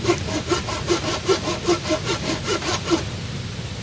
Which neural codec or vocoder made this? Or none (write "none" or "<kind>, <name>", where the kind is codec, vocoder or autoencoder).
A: none